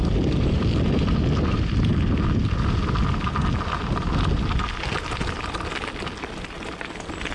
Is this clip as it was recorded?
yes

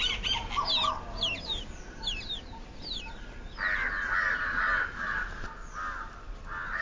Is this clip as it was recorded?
yes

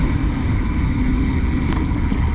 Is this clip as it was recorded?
yes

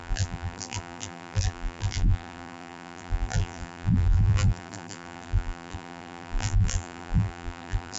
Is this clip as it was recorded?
no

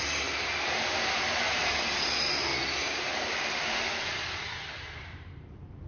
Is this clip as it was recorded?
no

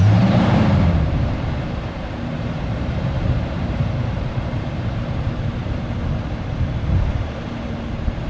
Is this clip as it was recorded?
no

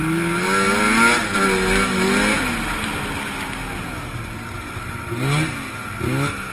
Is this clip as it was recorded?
yes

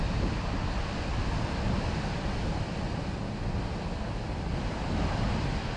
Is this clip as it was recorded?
yes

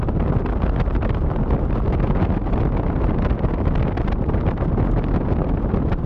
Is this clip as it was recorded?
yes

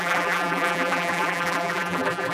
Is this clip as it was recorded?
no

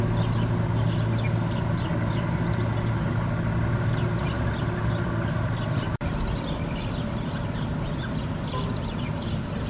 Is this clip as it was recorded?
yes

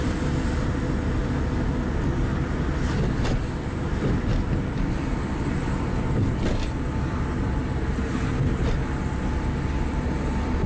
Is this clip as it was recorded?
yes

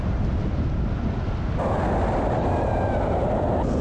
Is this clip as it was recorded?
yes